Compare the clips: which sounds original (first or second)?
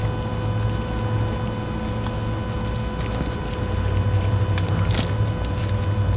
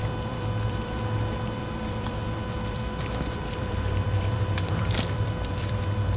first